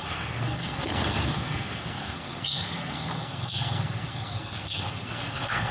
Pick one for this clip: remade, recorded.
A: remade